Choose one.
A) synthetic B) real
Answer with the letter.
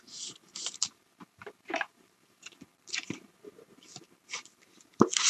A